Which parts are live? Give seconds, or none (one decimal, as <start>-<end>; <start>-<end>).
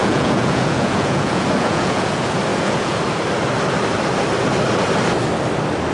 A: 2.1-2.5; 3.0-5.9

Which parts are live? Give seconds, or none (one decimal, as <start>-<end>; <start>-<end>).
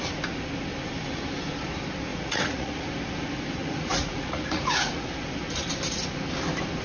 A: 0.0-2.1; 2.9-3.6; 5.1-6.8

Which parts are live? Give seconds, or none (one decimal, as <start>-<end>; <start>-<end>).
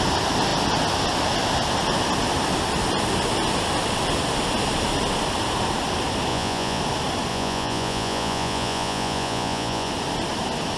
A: 0.0-6.3; 6.8-7.3; 9.9-10.8